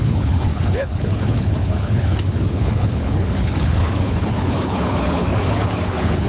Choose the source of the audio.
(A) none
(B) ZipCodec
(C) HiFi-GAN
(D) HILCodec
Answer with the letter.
D